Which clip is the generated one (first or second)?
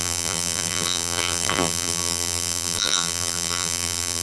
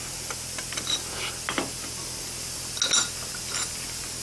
first